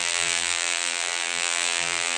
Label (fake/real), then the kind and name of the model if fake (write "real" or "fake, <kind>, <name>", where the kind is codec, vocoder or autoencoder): fake, vocoder, BigVGAN v2